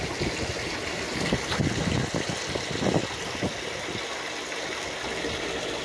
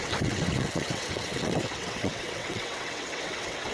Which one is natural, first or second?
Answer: first